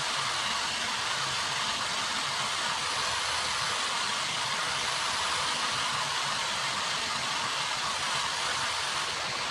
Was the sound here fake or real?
real